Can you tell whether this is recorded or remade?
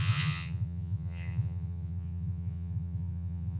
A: remade